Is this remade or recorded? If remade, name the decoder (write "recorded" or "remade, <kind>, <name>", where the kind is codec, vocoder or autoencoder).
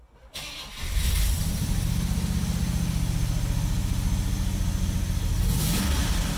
recorded